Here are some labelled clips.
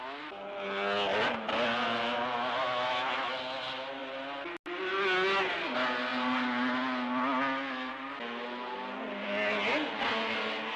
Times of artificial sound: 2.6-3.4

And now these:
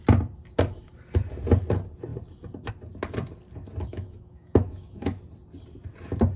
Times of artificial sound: 3.9-5.2

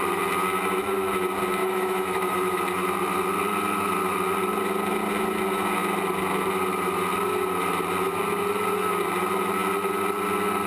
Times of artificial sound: 1.6-2.6

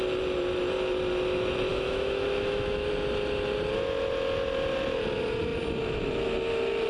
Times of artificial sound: 1.7-2.9

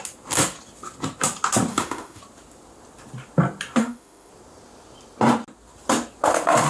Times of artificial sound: 1.7-2.2; 3.8-4.3

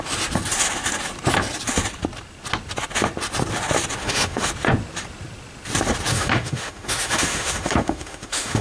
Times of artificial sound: 4.0-4.5; 6.1-8.6

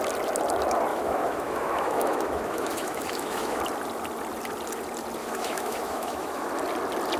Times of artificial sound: 0.9-3.6; 5.2-6.5

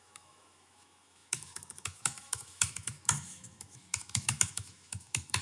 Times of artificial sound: 0.0-5.4